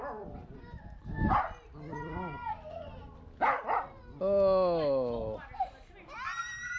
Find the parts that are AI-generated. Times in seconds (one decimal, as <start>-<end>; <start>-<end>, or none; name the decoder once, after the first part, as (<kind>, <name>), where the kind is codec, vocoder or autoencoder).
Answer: none